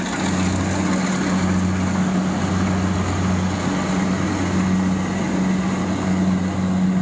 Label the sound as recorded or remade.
recorded